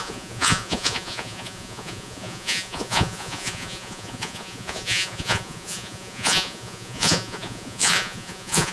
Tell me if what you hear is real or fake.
fake